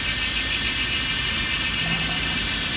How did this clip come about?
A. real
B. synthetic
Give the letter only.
A